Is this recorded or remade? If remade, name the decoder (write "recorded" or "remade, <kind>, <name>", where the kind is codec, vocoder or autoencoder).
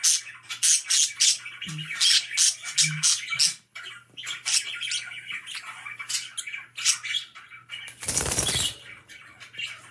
recorded